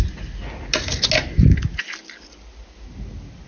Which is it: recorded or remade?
recorded